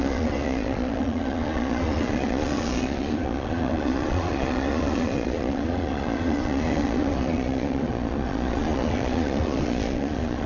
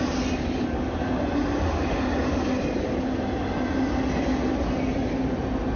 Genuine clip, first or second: second